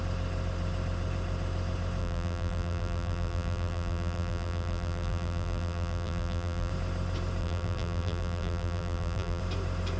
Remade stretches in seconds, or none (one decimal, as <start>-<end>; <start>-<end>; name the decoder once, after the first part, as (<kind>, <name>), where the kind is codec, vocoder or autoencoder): 2.0-6.7 (vocoder, BigVGAN v2); 7.4-9.4